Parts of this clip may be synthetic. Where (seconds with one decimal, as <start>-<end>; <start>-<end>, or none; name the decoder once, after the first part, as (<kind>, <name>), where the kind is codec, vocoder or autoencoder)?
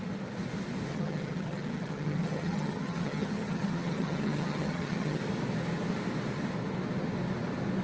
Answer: 0.9-5.2 (vocoder, HiFi-GAN)